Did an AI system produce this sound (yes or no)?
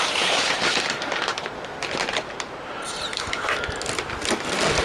no